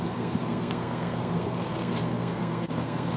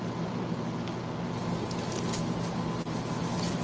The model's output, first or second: first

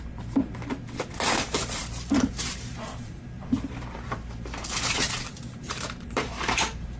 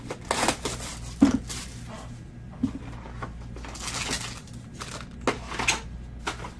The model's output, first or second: first